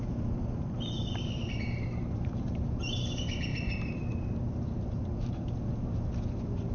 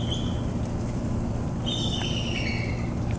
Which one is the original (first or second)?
second